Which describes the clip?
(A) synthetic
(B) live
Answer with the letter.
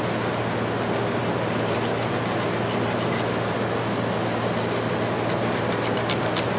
B